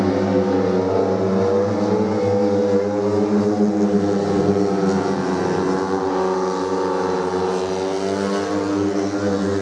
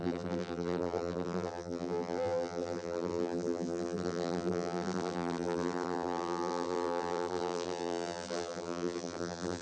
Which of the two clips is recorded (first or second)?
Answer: first